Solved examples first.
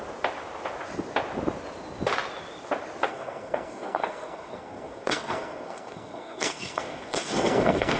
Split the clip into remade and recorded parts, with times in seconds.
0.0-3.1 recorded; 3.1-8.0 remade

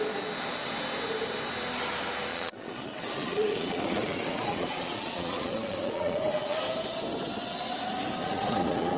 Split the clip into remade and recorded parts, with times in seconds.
0.0-2.3 recorded; 2.3-6.6 remade; 6.6-8.2 recorded; 8.2-9.0 remade

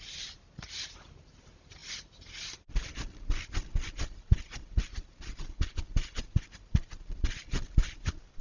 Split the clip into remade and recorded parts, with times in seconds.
0.0-8.4 recorded

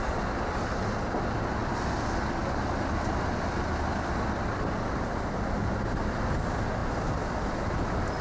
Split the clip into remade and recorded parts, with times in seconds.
0.0-8.2 recorded

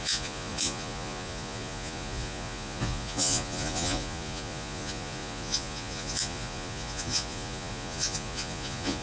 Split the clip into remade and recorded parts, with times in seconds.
0.0-9.0 remade

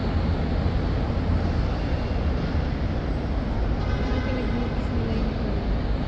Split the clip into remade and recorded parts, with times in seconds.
0.0-6.1 recorded

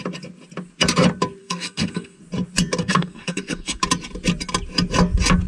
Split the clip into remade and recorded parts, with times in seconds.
0.0-1.4 recorded; 1.4-2.2 remade; 2.2-2.8 recorded; 2.8-3.8 remade; 3.8-5.5 recorded